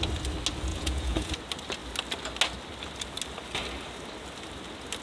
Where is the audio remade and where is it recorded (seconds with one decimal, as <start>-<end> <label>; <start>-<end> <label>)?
0.0-0.7 recorded; 0.7-1.3 remade; 1.3-5.0 recorded